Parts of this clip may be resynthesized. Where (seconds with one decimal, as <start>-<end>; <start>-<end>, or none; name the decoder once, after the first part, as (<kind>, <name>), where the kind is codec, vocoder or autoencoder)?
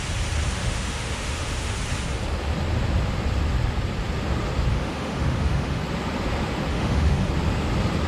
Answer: 0.6-1.7 (autoencoder, DAC-VAE); 4.7-5.8; 6.7-7.3